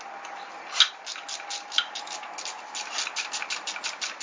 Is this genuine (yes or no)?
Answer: yes